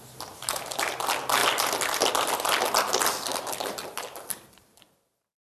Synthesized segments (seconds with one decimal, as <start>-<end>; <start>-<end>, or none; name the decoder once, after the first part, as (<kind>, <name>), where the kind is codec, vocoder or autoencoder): 1.4-2.1 (vocoder, BigVGAN v2); 3.8-4.9